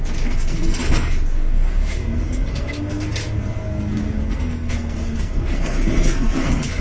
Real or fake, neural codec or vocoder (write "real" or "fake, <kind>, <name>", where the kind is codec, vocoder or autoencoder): fake, codec, SNAC